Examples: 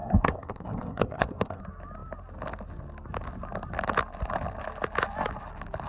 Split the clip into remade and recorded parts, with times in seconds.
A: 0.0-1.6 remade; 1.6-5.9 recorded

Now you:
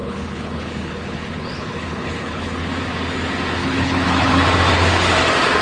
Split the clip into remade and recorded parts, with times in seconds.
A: 0.0-2.7 remade; 2.7-3.6 recorded; 3.6-4.4 remade; 4.4-5.6 recorded

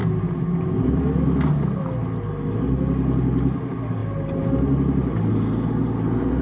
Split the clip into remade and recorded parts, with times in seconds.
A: 0.0-6.4 recorded

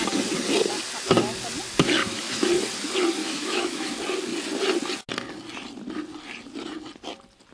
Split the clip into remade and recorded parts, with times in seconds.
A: 0.0-2.0 recorded; 2.0-2.5 remade; 2.5-3.2 recorded; 3.2-3.9 remade; 3.9-7.5 recorded